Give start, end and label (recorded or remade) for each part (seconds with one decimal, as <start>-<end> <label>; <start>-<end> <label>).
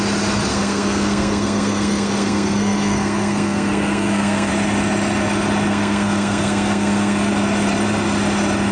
0.0-0.5 recorded; 0.5-4.5 remade; 4.5-5.7 recorded; 5.7-7.3 remade; 7.3-8.7 recorded